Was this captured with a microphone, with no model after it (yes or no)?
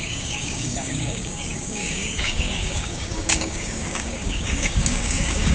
no